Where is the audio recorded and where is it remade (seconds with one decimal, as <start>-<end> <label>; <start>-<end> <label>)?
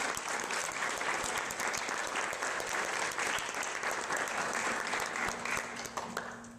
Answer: 0.0-0.6 recorded; 0.6-1.2 remade; 1.2-2.0 recorded; 2.0-4.9 remade; 4.9-6.6 recorded